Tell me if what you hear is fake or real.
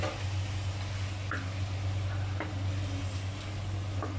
real